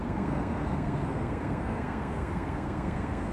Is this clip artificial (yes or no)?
yes